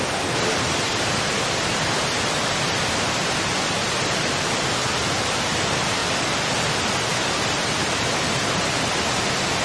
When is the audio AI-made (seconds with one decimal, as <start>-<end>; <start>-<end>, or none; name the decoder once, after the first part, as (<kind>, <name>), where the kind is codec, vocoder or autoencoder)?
0.0-9.6 (vocoder, BigVGAN v2)